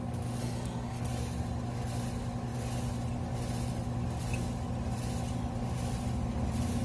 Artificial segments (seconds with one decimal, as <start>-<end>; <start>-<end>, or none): 0.4-1.0